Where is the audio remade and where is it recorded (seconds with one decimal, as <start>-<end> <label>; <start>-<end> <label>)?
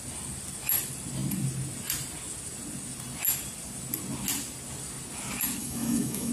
0.0-5.6 recorded; 5.6-6.3 remade